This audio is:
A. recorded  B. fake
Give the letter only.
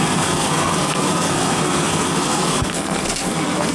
B